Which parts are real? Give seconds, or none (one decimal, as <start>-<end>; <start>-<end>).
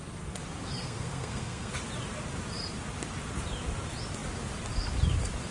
0.0-0.8; 1.7-5.5